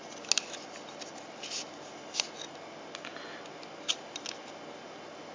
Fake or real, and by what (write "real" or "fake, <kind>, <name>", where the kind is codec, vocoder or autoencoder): real